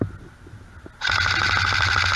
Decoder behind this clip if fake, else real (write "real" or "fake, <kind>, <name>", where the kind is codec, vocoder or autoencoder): real